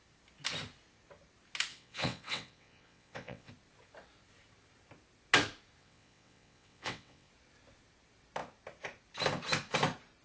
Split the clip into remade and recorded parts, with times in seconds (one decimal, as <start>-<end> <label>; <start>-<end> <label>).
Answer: 0.0-1.7 recorded; 1.7-3.5 remade; 3.5-5.8 recorded; 5.8-7.3 remade; 7.3-10.2 recorded